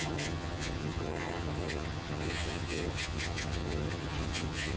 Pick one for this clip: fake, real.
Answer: fake